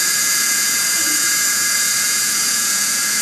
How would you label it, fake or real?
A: fake